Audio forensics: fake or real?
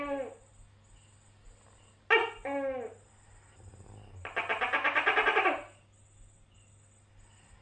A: real